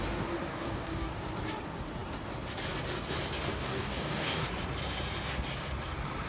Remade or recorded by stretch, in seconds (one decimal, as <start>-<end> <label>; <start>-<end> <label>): 0.0-0.5 recorded; 0.5-1.1 remade; 1.1-3.5 recorded; 3.5-4.5 remade; 4.5-6.3 recorded